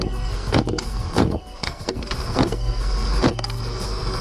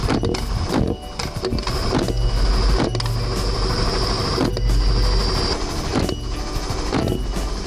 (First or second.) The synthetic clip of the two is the first